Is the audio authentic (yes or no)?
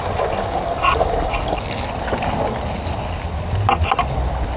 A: yes